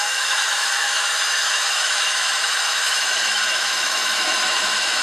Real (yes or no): no